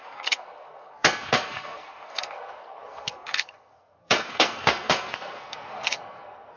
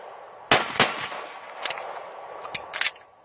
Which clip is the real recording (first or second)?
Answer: second